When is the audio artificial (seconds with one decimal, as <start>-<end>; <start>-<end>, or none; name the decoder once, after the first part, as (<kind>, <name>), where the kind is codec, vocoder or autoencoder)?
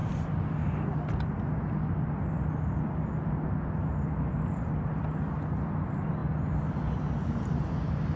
none